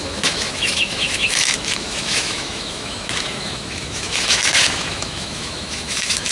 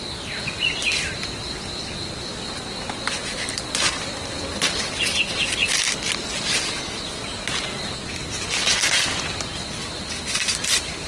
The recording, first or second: second